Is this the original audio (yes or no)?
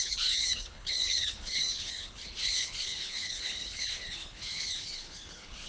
no